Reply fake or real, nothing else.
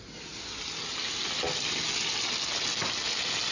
real